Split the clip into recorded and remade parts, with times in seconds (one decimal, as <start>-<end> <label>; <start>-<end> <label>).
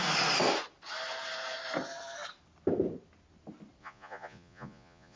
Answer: 0.0-3.8 recorded; 3.8-5.2 remade